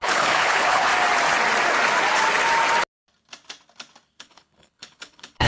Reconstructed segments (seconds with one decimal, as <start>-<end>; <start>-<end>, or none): 0.0-0.9; 4.2-5.5